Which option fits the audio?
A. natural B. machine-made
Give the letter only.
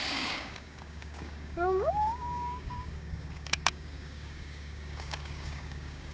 B